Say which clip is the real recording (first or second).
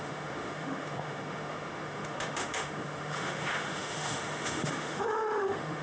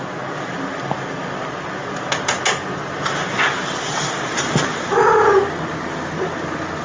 second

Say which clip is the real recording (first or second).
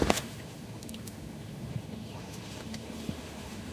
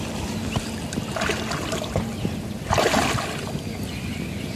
second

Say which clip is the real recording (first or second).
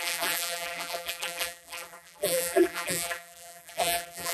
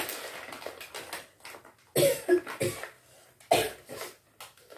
second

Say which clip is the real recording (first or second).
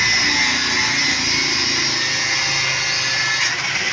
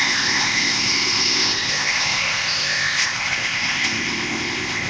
first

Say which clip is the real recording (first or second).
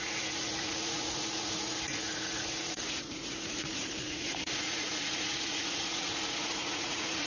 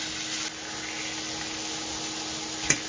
second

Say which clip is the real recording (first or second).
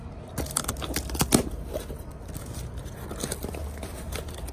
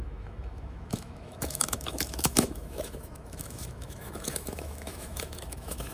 first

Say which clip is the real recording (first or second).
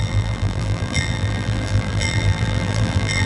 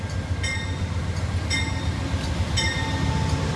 second